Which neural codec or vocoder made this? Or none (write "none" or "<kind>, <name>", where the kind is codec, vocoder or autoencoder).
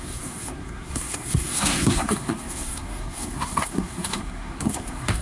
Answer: codec, SNAC